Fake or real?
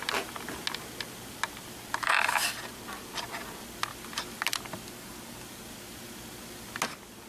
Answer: real